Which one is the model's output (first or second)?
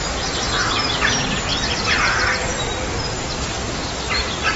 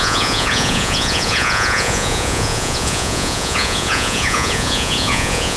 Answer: second